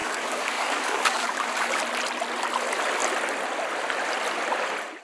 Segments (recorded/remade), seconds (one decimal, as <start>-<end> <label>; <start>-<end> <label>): 0.0-1.8 remade; 1.8-5.0 recorded